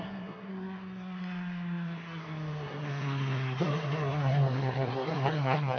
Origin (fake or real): fake